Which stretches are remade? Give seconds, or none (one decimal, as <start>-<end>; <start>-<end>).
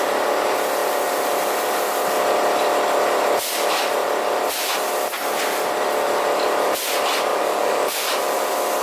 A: 7.3-8.2